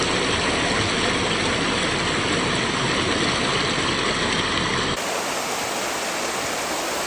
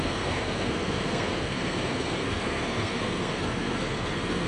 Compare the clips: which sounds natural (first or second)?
first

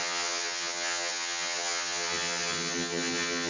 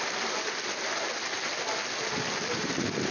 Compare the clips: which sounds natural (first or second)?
second